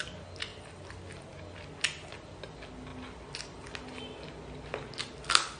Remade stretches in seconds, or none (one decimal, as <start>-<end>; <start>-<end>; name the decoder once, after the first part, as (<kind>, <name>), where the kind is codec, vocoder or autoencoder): none